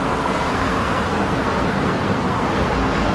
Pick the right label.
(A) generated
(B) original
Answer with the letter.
A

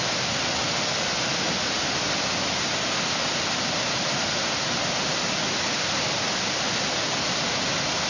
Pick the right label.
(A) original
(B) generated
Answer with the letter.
A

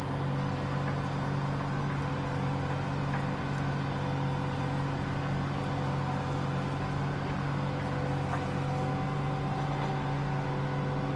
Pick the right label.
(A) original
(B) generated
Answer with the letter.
A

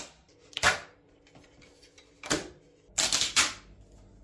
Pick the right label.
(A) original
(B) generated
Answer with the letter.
A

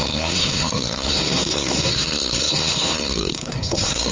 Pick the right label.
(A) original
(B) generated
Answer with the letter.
B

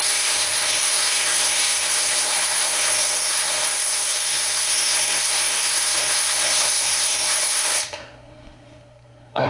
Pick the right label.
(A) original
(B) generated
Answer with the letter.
B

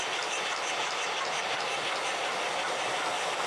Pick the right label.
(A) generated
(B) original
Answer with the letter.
B